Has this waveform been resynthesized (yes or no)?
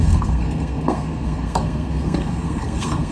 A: yes